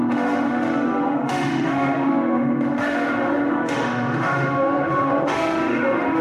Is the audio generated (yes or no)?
yes